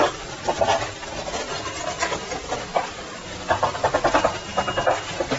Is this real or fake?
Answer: real